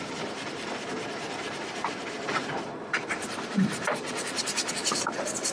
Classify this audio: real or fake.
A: fake